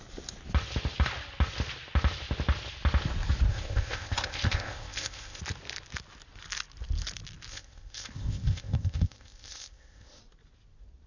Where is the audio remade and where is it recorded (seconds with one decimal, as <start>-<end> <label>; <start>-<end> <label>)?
0.0-3.5 recorded; 3.5-5.4 remade; 5.4-7.5 recorded; 7.5-10.2 remade; 10.2-11.1 recorded